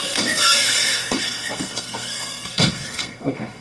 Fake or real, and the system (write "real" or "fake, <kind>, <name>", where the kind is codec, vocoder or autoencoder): fake, codec, SNAC